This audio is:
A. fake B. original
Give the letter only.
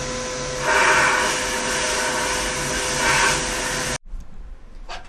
B